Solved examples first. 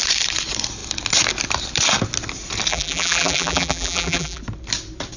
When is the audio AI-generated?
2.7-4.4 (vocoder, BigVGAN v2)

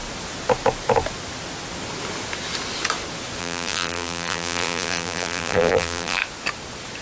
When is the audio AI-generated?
3.4-6.2 (vocoder, BigVGAN v2)

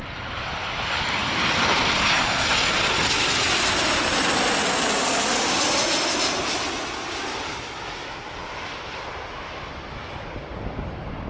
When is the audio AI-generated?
1.2-4.5 (vocoder, BigVGAN v2); 5.3-5.8

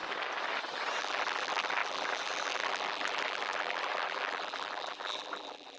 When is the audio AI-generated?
1.0-5.8 (vocoder, BigVGAN v2)